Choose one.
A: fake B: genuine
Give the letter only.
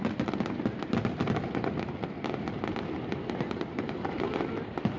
B